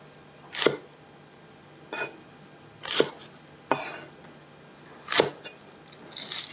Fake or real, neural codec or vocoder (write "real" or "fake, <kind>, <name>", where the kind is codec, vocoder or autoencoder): real